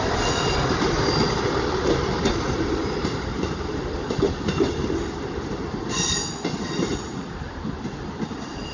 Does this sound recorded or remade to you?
recorded